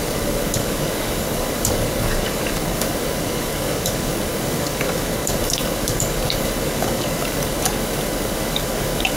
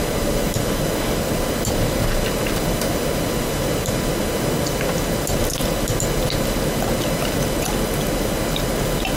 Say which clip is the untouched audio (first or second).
second